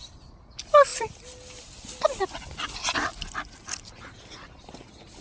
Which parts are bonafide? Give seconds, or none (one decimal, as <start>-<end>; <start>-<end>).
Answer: 0.0-5.2